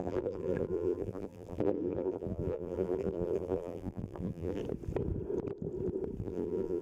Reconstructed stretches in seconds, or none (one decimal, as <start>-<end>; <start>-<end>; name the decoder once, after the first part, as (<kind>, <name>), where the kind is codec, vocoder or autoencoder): 0.0-4.6 (vocoder, BigVGAN v2); 6.2-6.8